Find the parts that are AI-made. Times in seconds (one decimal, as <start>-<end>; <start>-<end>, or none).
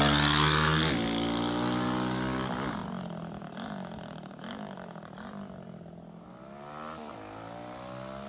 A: none